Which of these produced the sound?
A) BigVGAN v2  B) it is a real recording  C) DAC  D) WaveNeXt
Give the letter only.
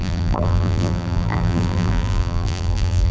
A